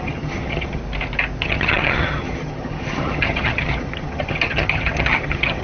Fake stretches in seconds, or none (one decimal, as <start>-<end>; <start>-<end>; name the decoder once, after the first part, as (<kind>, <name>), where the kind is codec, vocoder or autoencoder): 0.0-0.8 (vocoder, HiFi-GAN); 1.4-5.6